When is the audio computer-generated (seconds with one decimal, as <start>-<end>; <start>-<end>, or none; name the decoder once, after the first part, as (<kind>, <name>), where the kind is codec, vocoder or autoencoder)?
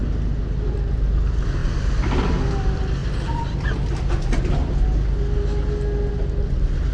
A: none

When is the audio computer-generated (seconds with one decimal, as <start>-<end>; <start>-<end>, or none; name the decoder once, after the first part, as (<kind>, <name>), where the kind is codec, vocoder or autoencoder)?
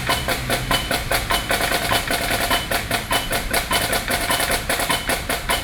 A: 0.0-0.4 (vocoder, BigVGAN v2); 3.8-5.6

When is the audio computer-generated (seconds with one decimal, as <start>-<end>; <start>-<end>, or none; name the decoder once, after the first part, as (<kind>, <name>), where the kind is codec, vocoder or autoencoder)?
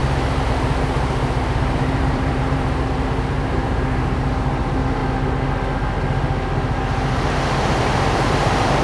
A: 1.5-5.0 (vocoder, BigVGAN v2); 7.8-8.8